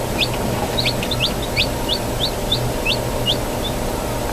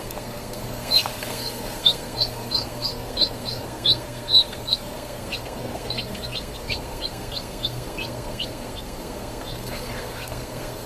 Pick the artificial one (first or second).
second